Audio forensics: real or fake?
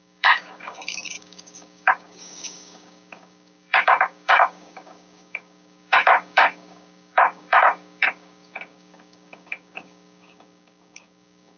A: fake